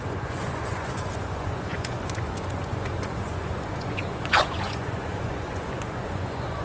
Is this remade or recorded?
remade